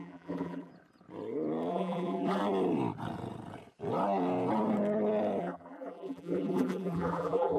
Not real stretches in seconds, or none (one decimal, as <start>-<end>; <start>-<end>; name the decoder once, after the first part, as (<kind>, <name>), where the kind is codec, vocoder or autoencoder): 0.0-0.7 (vocoder, BigVGAN v2); 1.7-2.4; 5.4-7.6